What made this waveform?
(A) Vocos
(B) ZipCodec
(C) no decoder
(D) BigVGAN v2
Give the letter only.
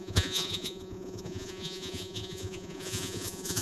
A